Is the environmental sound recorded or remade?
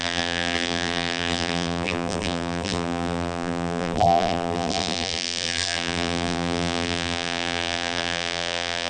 remade